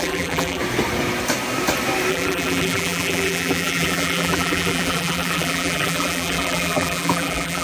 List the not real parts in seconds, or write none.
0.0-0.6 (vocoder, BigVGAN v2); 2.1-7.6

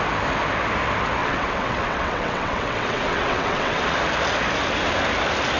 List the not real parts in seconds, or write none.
1.2-3.8 (vocoder, WaveNeXt)

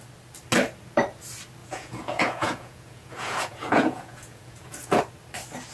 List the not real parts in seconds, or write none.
1.6-5.0 (vocoder, Vocos)

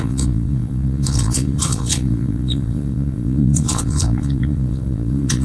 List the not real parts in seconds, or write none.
0.0-5.4 (vocoder, Vocos)

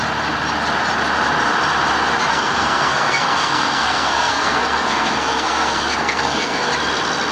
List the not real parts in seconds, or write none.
2.3-6.7 (codec, SNAC)